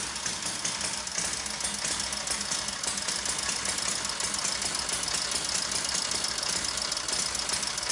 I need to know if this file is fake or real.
real